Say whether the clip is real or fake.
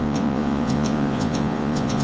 fake